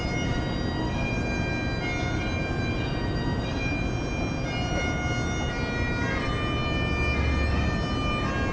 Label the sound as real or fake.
real